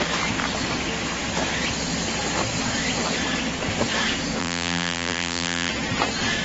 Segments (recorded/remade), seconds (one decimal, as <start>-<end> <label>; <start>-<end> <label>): 0.0-4.4 recorded; 4.4-5.7 remade; 5.7-6.4 recorded